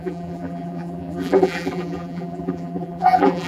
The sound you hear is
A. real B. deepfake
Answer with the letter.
B